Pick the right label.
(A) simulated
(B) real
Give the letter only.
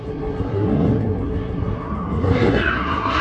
A